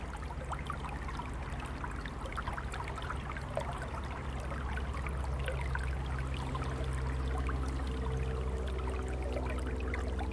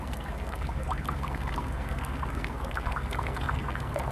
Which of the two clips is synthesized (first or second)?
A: second